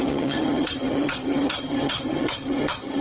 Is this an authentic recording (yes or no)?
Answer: no